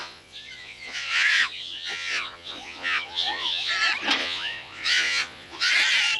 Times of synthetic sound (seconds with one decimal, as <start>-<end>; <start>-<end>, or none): 0.0-3.7; 4.2-5.7